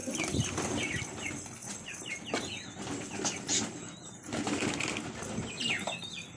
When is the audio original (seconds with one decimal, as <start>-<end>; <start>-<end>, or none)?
0.0-6.4